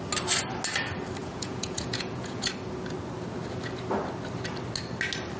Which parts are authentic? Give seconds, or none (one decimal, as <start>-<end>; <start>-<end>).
0.0-1.2; 2.5-5.4